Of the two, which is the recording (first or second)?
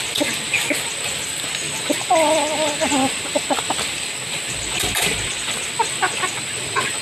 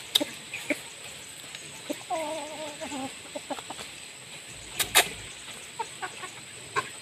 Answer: first